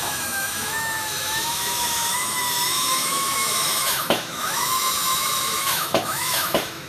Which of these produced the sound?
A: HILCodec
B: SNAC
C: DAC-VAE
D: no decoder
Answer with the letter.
C